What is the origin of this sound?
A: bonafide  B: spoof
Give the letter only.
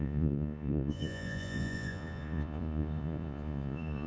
B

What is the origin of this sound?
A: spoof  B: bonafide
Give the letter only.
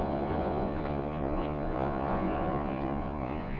A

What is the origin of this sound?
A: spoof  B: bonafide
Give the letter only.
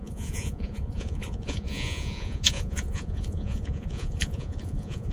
A